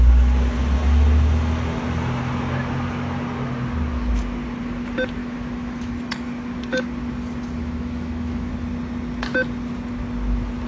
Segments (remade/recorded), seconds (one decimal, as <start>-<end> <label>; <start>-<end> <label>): 0.0-5.2 recorded; 5.2-5.9 remade; 5.9-7.6 recorded; 7.6-8.5 remade; 8.5-10.7 recorded